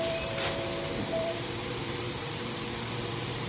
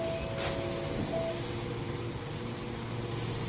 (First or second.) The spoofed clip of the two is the first